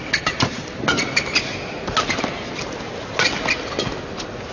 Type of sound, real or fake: real